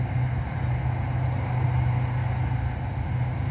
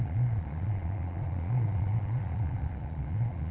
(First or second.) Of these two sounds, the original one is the first